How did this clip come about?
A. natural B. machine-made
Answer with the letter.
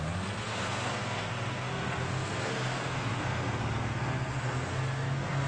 B